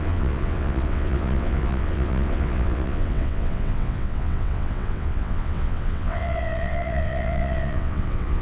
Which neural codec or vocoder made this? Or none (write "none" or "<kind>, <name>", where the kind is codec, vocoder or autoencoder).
vocoder, WaveNeXt